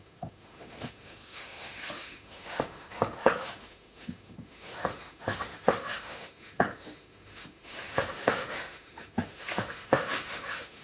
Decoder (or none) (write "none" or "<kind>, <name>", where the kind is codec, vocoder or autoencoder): autoencoder, DAC-VAE